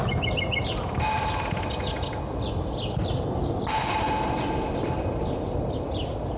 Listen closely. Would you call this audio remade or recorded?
recorded